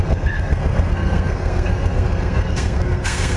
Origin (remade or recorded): remade